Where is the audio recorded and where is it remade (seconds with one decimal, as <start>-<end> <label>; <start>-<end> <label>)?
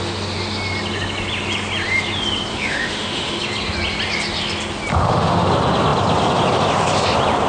0.0-2.5 recorded; 2.5-3.4 remade; 3.4-4.9 recorded; 4.9-5.5 remade; 5.5-7.5 recorded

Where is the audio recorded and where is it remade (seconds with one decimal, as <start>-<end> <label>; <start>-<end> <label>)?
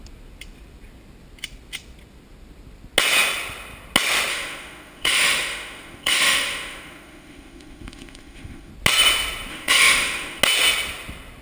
0.0-4.3 recorded; 4.3-8.7 remade; 8.7-9.5 recorded; 9.5-10.4 remade; 10.4-11.4 recorded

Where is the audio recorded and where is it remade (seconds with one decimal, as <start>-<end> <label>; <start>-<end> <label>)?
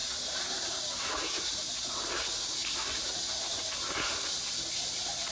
0.0-5.3 recorded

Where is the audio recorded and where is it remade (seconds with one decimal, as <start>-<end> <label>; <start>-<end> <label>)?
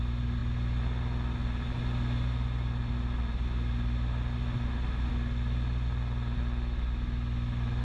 0.0-7.8 recorded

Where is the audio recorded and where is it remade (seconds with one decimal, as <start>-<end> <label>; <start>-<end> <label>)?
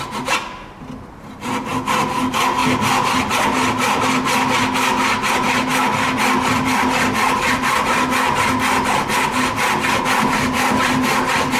0.0-11.6 recorded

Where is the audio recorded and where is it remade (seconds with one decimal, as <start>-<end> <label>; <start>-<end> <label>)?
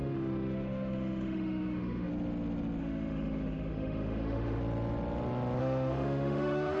0.0-2.1 remade; 2.1-2.8 recorded; 2.8-4.6 remade; 4.6-5.6 recorded; 5.6-6.8 remade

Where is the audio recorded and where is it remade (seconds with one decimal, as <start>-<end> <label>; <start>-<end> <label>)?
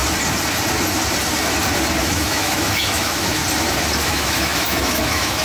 0.0-2.0 recorded; 2.0-3.4 remade; 3.4-4.0 recorded; 4.0-5.4 remade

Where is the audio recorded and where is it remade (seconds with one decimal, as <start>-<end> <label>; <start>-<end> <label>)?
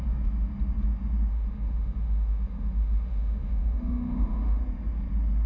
0.0-1.3 recorded; 1.3-4.6 remade; 4.6-5.5 recorded